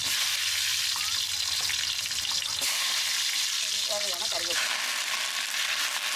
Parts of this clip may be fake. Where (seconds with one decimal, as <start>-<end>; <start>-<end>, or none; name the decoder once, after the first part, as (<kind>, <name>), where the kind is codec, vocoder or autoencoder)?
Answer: none